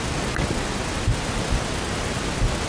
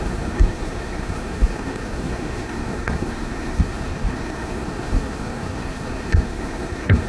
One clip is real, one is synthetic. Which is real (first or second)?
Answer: first